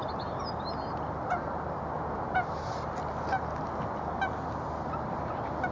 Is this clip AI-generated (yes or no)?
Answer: no